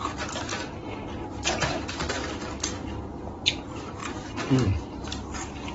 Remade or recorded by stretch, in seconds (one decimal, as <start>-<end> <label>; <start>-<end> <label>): 0.0-5.7 remade